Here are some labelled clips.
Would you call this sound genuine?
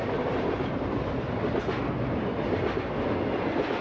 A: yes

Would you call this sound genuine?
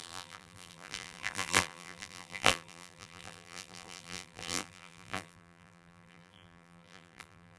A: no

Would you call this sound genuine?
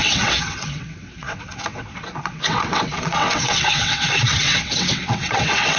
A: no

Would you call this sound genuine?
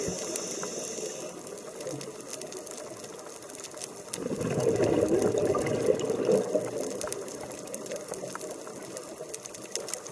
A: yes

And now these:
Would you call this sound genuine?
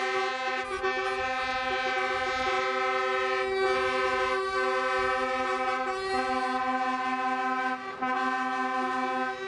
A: yes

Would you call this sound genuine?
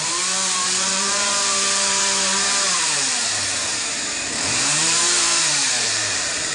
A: no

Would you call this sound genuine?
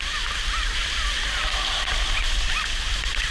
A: yes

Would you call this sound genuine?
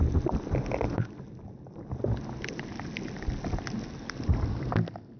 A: yes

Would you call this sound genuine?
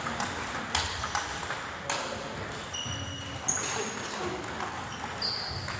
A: yes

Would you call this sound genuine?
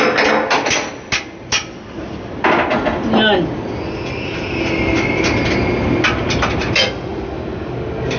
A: yes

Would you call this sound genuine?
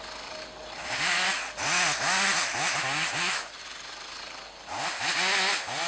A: yes